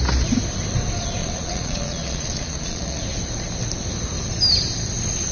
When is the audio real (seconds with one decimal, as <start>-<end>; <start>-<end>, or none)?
0.0-1.2; 3.0-5.3